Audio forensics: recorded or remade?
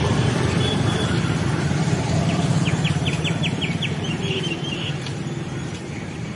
remade